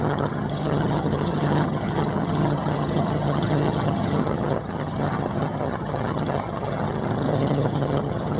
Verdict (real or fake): fake